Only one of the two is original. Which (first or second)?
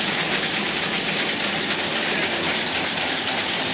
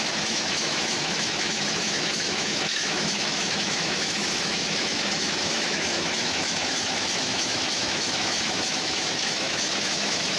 first